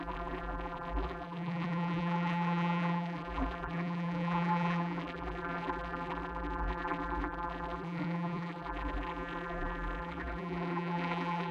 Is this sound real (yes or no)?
no